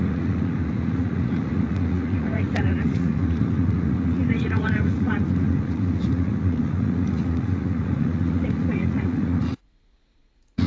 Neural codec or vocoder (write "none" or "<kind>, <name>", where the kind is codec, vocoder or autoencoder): vocoder, Vocos